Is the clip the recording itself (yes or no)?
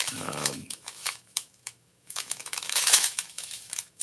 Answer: no